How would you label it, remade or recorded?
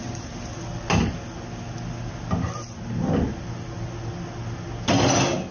recorded